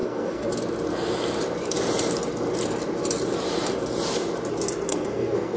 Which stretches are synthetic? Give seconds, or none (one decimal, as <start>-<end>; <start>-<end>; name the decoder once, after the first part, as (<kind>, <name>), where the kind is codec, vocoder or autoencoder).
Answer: 0.0-0.5 (codec, SNAC); 4.9-5.6